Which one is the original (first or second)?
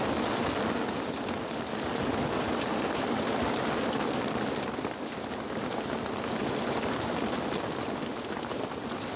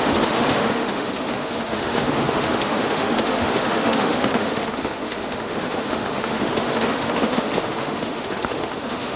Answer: first